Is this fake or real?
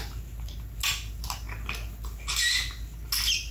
real